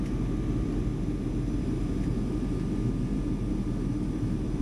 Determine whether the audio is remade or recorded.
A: recorded